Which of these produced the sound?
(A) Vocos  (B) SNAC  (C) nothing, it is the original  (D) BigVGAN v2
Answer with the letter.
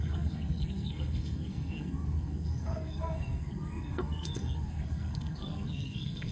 B